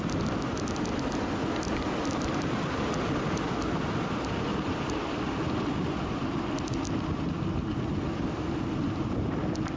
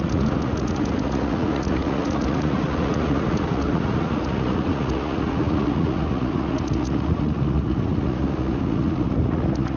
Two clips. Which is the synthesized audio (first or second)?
second